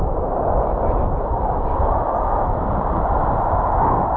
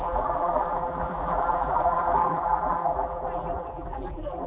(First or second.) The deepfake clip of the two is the second